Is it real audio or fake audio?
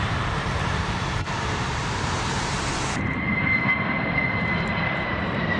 fake